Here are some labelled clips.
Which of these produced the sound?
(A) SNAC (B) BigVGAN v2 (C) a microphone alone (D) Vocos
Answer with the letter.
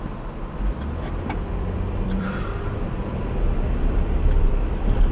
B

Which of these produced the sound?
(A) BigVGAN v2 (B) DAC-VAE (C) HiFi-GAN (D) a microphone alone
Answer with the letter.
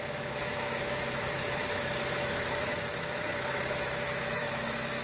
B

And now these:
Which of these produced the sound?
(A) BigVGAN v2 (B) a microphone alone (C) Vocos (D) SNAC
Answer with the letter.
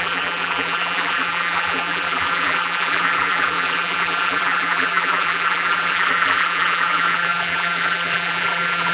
A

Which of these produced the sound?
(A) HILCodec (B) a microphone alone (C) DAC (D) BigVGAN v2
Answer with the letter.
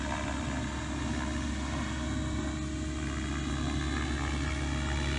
B